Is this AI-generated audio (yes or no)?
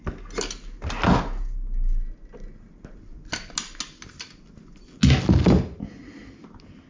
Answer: no